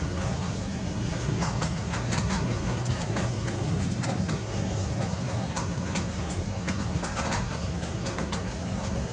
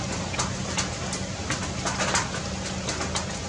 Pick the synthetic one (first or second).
first